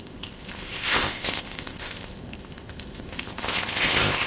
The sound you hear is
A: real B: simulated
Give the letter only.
B